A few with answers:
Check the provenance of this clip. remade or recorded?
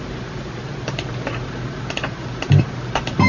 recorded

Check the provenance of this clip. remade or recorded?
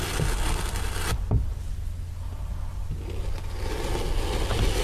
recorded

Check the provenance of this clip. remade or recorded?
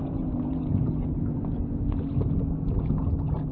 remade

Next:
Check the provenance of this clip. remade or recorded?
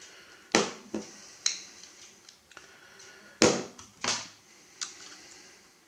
recorded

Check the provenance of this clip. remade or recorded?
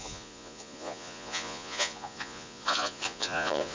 remade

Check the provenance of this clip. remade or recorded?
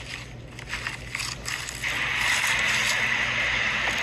recorded